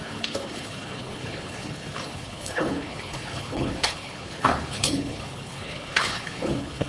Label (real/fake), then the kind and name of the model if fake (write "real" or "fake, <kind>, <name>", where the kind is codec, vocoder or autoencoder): fake, codec, HILCodec